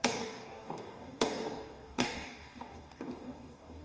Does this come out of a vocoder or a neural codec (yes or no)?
yes